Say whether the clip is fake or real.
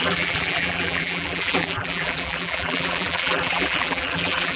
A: fake